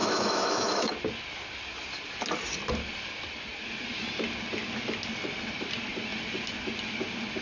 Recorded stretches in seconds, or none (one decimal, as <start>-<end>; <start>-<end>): 0.9-7.4

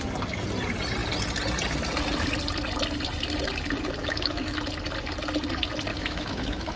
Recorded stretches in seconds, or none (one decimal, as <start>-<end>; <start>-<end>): 0.0-4.0; 4.6-5.9